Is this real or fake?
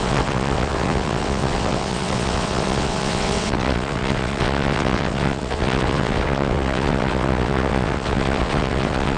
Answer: fake